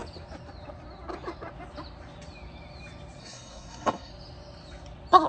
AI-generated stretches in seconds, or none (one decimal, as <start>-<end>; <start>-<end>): 3.2-4.1